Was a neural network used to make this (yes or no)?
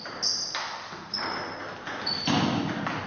no